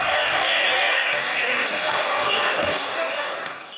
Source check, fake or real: fake